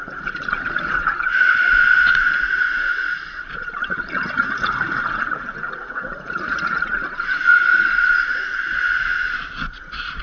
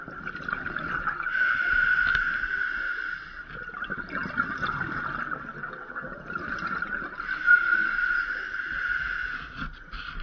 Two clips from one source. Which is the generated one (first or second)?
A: first